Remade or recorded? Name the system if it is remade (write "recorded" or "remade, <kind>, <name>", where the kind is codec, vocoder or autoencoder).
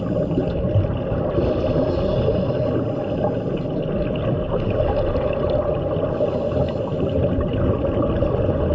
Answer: recorded